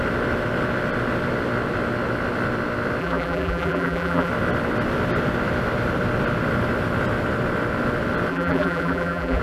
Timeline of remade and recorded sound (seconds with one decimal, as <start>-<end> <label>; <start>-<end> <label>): 0.0-3.0 recorded; 3.0-4.3 remade; 4.3-8.3 recorded; 8.3-9.4 remade